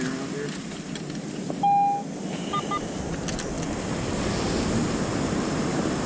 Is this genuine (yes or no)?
yes